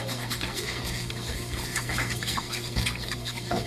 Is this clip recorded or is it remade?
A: remade